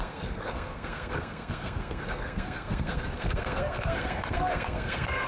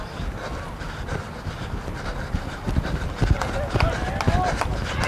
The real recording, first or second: second